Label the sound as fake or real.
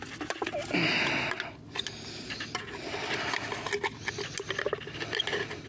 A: real